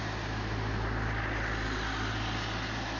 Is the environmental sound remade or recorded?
recorded